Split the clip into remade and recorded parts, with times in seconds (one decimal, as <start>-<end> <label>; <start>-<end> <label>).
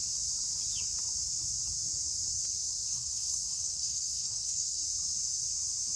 0.0-2.9 recorded; 2.9-4.8 remade; 4.8-6.0 recorded